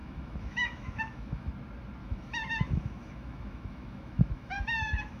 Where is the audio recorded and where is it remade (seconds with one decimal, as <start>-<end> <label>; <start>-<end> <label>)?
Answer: 0.0-1.5 remade; 1.5-2.0 recorded; 2.0-5.2 remade